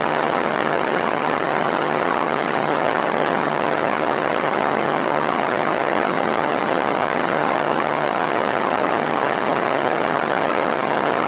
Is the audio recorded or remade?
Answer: remade